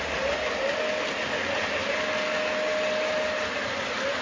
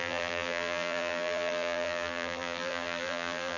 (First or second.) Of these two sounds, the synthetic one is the second